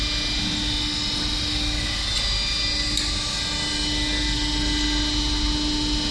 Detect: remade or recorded recorded